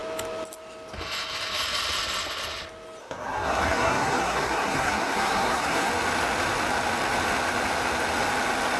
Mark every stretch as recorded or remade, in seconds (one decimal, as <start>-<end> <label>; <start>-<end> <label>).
0.0-3.0 recorded; 3.0-5.9 remade; 5.9-8.8 recorded